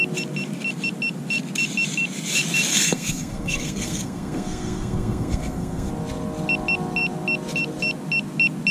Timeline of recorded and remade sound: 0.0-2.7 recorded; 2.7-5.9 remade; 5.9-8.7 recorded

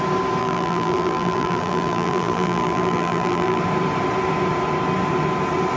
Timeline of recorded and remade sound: 0.0-0.4 recorded; 0.4-3.6 remade; 3.6-5.8 recorded